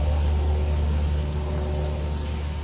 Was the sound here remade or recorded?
recorded